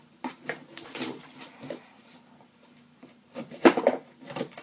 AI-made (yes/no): yes